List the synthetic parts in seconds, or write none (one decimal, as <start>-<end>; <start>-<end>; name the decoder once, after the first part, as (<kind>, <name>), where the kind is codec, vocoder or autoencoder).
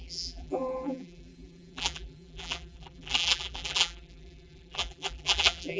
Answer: 0.0-5.8 (vocoder, BigVGAN v2)